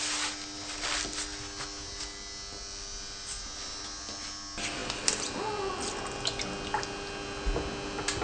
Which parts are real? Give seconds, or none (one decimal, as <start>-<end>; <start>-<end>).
0.0-8.2